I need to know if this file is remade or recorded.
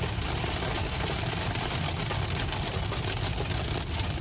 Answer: recorded